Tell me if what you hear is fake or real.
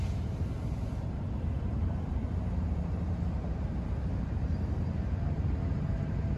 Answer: fake